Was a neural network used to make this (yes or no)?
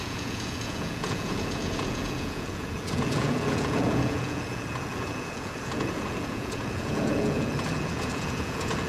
yes